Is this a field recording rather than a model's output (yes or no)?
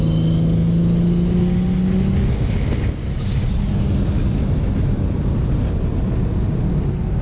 yes